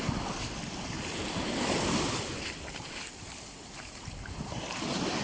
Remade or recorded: recorded